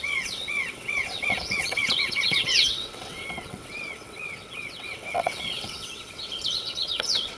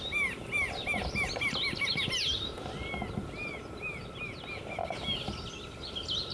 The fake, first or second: first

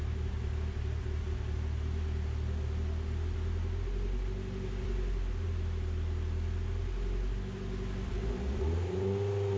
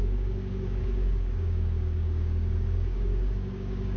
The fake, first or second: second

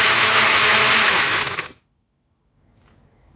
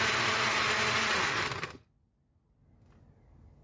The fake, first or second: first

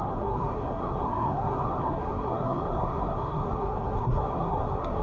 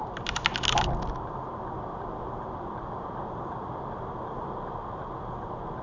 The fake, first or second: first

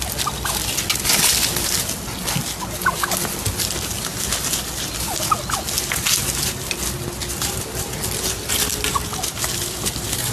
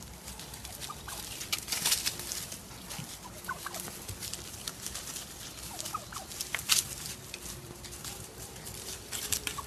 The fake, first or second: second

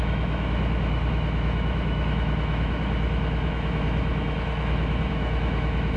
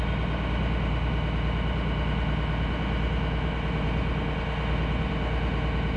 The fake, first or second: first